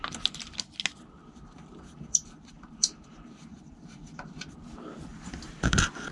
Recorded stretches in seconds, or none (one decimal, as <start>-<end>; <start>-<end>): 0.0-1.2; 4.1-5.1